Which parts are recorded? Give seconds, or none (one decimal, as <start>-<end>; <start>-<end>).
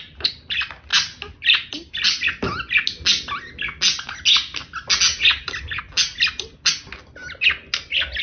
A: 0.0-8.2